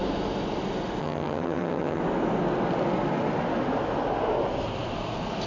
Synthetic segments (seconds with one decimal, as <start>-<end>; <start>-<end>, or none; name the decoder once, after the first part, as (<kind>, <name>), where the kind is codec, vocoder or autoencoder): 1.0-2.0 (vocoder, HiFi-GAN)